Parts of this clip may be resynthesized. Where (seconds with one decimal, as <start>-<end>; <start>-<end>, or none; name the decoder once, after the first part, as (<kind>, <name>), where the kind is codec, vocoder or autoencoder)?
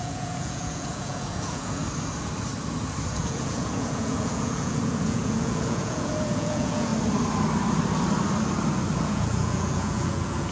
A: 0.0-1.8 (vocoder, Vocos); 3.1-6.9; 9.0-10.5